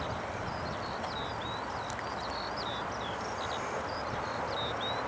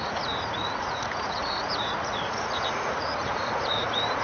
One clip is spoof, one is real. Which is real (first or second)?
first